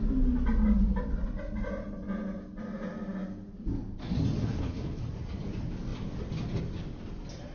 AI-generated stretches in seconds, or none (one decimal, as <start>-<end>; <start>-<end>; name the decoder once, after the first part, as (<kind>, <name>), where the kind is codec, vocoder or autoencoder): 4.4-5.0 (codec, HILCodec)